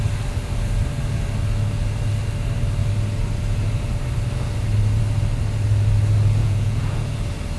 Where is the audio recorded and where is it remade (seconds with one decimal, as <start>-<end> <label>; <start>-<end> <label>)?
0.0-6.4 recorded; 6.4-7.1 remade; 7.1-7.6 recorded

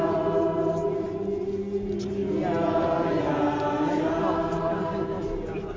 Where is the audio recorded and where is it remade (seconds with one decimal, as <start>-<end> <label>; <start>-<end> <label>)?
0.0-5.8 recorded

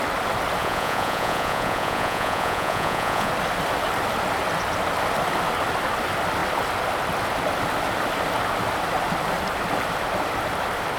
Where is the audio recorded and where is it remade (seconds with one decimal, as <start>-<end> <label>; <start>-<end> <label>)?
0.0-0.6 recorded; 0.6-3.3 remade; 3.3-11.0 recorded

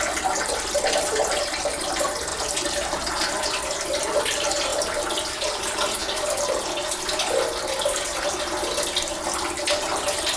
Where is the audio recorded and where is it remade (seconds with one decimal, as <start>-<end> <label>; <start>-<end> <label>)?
0.0-10.4 recorded

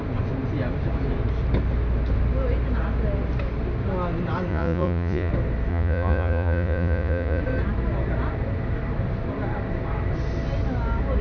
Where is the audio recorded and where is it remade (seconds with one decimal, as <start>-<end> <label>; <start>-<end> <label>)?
0.0-4.5 recorded; 4.5-5.3 remade; 5.3-5.7 recorded; 5.7-7.4 remade; 7.4-11.2 recorded

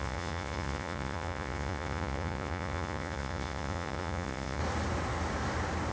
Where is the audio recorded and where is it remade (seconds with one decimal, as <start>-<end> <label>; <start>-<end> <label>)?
0.0-4.6 remade; 4.6-5.9 recorded

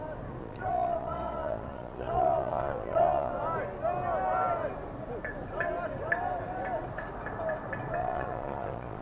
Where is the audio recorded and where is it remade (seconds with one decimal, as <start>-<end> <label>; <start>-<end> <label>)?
0.0-0.4 recorded; 0.4-3.3 remade; 3.3-8.0 recorded; 8.0-9.0 remade